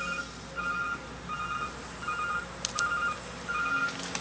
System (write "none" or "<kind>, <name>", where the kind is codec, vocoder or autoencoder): none